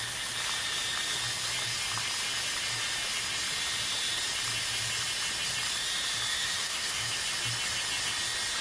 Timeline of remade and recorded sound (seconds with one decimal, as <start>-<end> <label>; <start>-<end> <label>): 0.0-6.3 recorded; 6.3-7.2 remade; 7.2-8.6 recorded